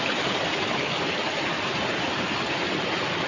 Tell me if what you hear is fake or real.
real